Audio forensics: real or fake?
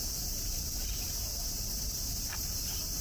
fake